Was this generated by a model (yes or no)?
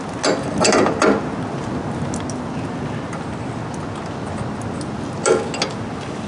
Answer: no